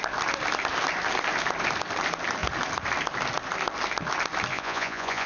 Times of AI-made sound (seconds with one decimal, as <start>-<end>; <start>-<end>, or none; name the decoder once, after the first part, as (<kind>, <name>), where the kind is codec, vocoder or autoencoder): 4.5-5.3 (vocoder, Vocos)